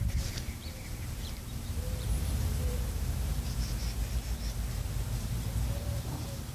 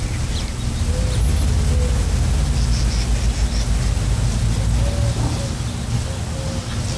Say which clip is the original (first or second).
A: second